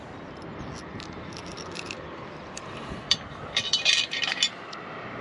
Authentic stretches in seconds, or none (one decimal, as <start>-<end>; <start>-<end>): 0.0-1.5; 4.4-5.2